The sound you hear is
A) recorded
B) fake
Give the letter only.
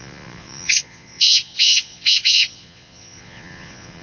B